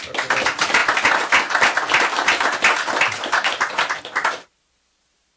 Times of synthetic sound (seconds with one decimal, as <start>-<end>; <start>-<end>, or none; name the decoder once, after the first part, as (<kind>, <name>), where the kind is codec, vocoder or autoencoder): none